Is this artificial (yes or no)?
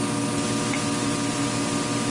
yes